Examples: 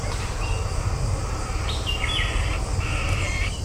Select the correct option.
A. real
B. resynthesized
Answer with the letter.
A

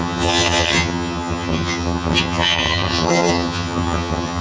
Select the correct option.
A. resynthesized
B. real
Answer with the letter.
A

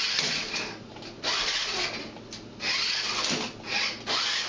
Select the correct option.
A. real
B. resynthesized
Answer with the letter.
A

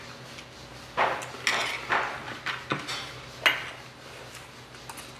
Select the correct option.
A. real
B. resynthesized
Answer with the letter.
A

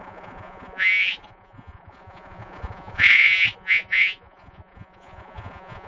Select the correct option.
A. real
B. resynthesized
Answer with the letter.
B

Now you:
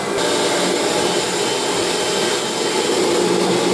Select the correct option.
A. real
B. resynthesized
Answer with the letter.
A